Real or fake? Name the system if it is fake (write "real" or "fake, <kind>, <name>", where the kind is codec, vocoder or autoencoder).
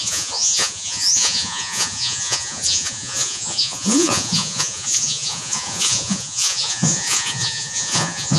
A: fake, vocoder, Vocos